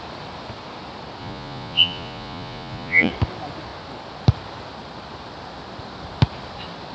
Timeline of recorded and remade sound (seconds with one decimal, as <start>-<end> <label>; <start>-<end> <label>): 0.0-1.2 recorded; 1.2-3.1 remade; 3.1-6.9 recorded